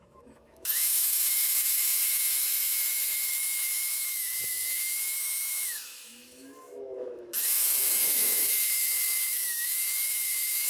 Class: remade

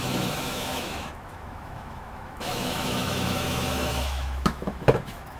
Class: remade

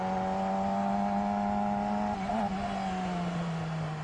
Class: recorded